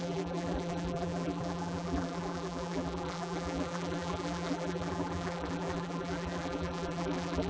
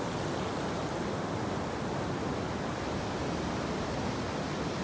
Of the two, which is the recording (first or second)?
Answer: second